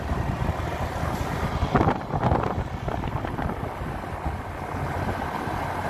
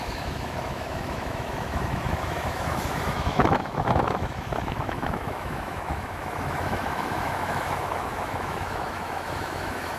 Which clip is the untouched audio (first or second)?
first